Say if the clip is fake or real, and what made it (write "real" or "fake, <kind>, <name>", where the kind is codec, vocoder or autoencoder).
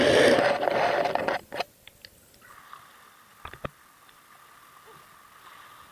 real